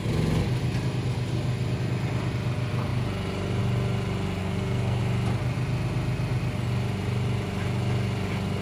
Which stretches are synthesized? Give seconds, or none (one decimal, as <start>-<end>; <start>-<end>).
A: 4.4-5.0